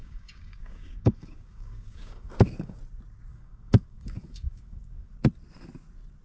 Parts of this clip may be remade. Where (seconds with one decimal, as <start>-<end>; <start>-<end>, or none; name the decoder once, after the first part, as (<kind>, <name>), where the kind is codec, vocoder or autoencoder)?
0.0-2.8 (codec, DAC); 3.3-5.1